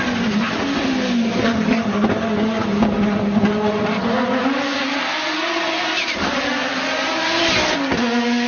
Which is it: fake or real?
real